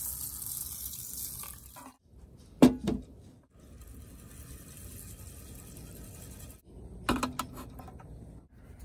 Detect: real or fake real